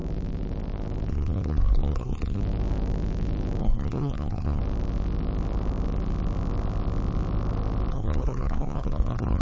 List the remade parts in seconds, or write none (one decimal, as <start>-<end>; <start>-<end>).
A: 1.1-2.4; 3.6-4.6; 7.9-9.4